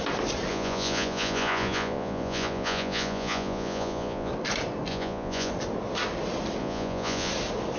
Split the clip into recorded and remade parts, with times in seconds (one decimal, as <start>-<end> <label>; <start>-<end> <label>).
0.0-0.5 recorded; 0.5-4.3 remade; 4.3-4.9 recorded; 4.9-5.5 remade; 5.5-6.6 recorded; 6.6-7.3 remade; 7.3-7.8 recorded

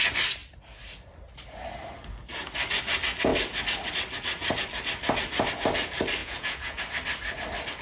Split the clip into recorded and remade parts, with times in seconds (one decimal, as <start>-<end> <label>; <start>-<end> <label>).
0.0-6.2 recorded; 6.2-6.8 remade; 6.8-7.8 recorded

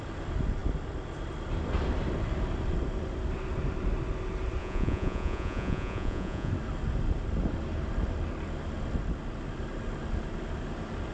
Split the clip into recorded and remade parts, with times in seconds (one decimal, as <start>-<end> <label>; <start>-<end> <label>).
0.0-4.6 recorded; 4.6-6.5 remade; 6.5-11.1 recorded

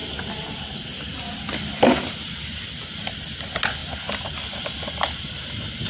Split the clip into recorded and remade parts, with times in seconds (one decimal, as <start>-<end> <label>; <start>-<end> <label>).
0.0-5.9 recorded

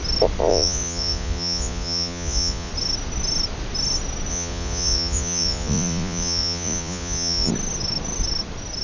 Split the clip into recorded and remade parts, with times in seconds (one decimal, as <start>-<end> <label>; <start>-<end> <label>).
0.0-0.5 recorded; 0.5-2.7 remade; 2.7-4.3 recorded; 4.3-7.5 remade; 7.5-8.8 recorded